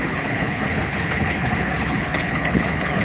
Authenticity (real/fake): fake